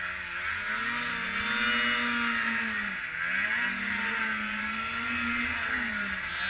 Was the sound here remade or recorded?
recorded